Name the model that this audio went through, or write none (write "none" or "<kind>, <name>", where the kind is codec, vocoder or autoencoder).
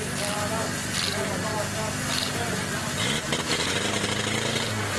none